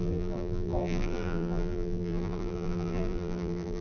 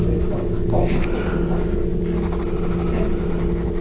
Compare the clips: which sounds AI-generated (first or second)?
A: first